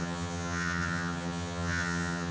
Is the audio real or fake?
fake